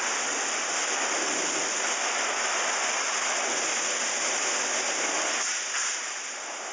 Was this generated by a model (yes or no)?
no